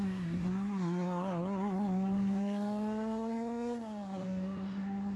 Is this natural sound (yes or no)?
no